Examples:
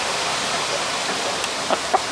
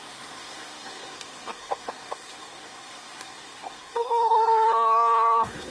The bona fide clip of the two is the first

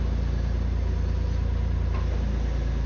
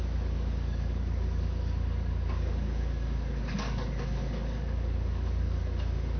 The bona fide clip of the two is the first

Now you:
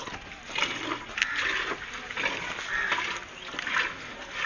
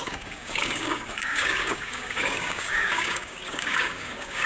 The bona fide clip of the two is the first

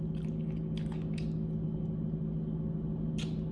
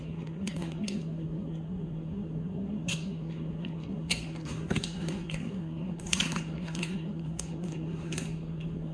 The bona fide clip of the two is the first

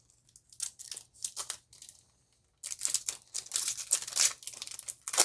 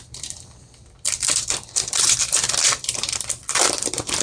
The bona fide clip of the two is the first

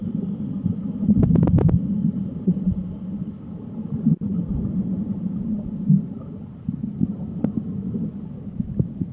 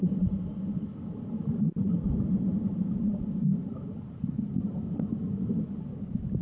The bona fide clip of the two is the second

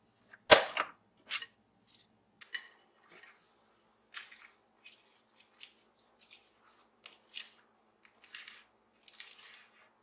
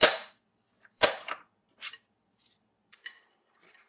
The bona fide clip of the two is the first